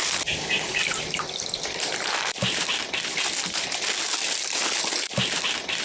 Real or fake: fake